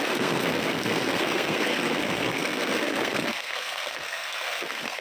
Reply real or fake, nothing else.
fake